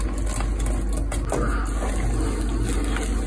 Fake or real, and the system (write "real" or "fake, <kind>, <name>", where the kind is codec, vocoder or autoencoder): real